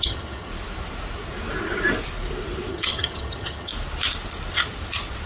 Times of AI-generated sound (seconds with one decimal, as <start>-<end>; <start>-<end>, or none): 0.0-0.5; 2.7-3.7